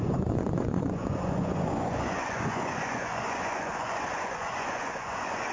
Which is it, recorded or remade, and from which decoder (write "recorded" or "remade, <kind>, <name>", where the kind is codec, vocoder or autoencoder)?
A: remade, vocoder, Vocos